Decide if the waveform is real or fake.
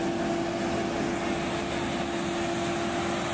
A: real